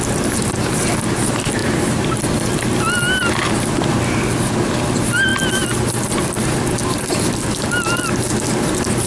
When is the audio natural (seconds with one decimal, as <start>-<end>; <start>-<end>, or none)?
0.0-1.6; 2.2-9.1